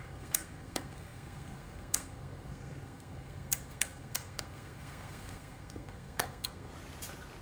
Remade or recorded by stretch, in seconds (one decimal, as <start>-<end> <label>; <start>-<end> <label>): 0.0-6.7 remade; 6.7-7.4 recorded